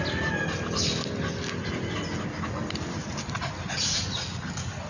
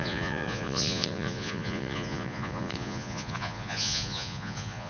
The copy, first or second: second